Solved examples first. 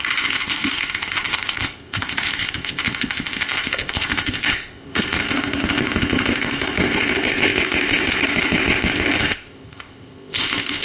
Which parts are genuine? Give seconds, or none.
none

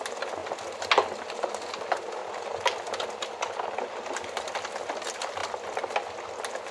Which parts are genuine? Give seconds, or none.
0.0-6.7

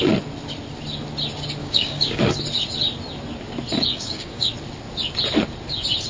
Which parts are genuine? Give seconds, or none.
0.0-1.6; 2.2-3.9; 4.5-6.1

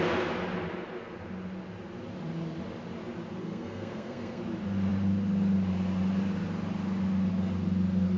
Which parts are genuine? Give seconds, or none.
0.0-3.4; 4.4-8.2

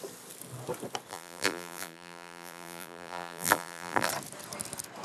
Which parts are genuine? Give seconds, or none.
0.0-1.1; 4.1-5.0

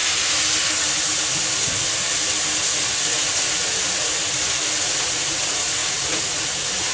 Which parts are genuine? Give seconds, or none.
0.0-3.1; 4.2-4.8

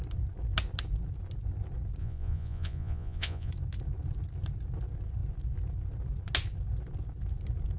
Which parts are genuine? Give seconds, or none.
0.0-2.0; 3.5-7.8